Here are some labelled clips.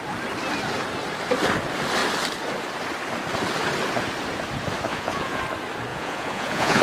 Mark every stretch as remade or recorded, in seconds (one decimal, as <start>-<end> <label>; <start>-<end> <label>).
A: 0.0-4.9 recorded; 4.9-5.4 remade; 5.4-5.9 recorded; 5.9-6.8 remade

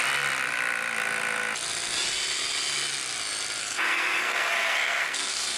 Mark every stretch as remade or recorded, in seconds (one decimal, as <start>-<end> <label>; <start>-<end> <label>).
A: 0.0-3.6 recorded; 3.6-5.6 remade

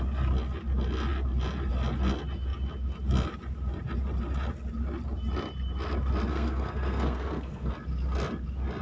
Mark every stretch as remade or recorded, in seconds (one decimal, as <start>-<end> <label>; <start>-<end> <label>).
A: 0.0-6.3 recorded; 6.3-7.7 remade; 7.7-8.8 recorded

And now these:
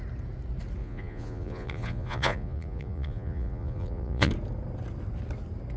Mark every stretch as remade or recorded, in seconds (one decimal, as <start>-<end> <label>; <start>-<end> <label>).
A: 0.0-0.8 recorded; 0.8-4.3 remade; 4.3-5.8 recorded

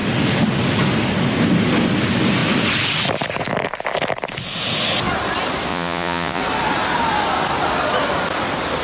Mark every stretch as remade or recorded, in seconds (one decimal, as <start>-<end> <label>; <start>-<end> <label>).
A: 0.0-5.7 recorded; 5.7-6.4 remade; 6.4-8.8 recorded